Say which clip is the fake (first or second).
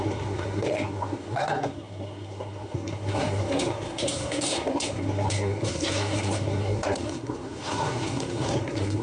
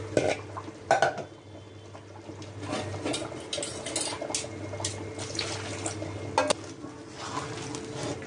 first